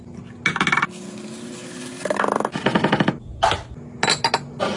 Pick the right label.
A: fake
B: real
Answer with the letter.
B